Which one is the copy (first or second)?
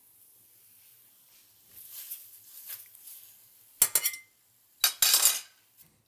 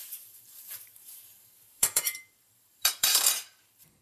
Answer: second